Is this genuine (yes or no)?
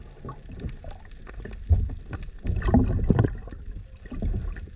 yes